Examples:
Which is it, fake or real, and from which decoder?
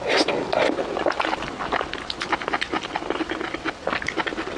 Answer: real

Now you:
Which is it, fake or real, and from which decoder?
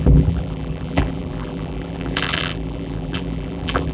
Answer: fake, vocoder, BigVGAN v2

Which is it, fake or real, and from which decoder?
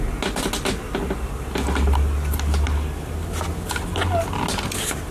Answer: real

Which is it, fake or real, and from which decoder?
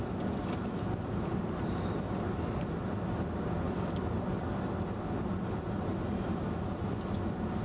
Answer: real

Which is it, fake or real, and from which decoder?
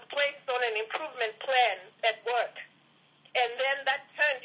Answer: real